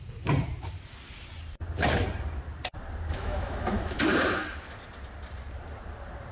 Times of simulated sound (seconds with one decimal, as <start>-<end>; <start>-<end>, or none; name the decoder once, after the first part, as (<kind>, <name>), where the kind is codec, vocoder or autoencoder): 3.1-4.0 (autoencoder, DAC-VAE)